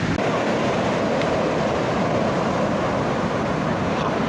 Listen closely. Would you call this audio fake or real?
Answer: real